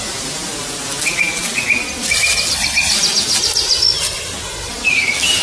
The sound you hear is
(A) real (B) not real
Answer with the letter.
A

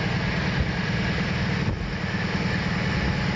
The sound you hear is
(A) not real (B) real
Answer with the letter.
B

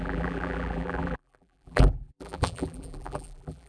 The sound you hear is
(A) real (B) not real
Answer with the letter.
B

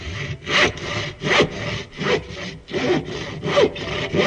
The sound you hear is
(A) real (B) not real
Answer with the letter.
A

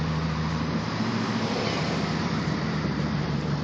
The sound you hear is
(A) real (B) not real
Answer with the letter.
B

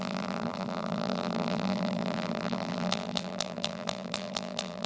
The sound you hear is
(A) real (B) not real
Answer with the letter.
B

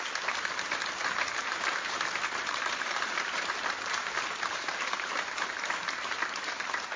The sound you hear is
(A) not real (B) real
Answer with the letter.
A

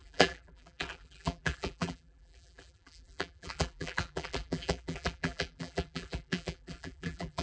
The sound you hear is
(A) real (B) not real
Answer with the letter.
B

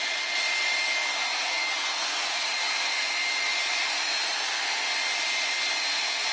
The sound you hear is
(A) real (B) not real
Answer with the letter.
A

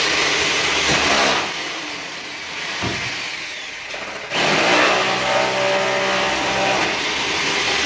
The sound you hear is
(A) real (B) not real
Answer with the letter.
A